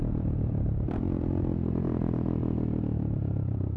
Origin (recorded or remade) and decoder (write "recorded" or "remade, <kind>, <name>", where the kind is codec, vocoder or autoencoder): remade, vocoder, BigVGAN v2